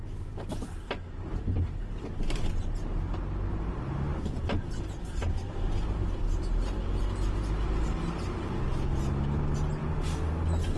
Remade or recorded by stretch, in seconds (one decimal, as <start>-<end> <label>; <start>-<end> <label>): 0.0-10.8 recorded